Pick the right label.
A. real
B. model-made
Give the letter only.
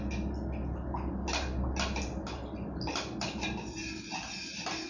A